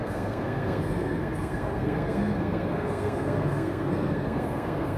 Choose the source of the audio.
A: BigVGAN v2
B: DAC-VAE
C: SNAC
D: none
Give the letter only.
C